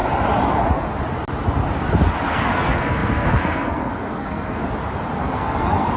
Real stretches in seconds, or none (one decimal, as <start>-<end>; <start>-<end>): 0.0-2.3; 4.6-5.2